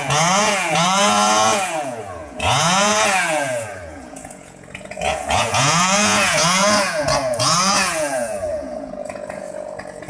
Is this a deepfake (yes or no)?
yes